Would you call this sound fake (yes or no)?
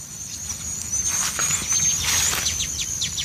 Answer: no